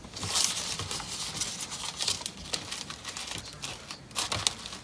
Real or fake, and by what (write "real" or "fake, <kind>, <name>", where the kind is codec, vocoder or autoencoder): real